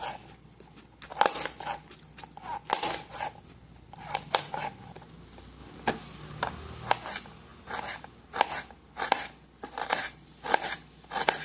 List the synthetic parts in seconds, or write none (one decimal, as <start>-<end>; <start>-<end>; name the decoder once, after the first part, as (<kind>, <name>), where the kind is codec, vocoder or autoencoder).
1.1-4.5 (vocoder, BigVGAN v2); 5.6-6.9; 7.5-11.4

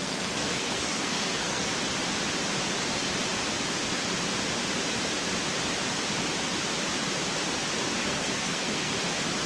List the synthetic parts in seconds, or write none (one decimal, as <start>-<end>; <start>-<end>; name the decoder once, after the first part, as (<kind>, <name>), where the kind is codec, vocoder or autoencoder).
0.0-1.7 (codec, SNAC); 8.0-8.9